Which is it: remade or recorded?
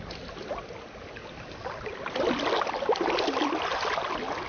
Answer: recorded